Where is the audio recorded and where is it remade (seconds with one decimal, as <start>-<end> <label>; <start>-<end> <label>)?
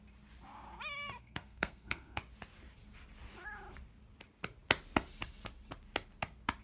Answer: 0.0-1.2 recorded; 1.2-2.2 remade; 2.2-6.6 recorded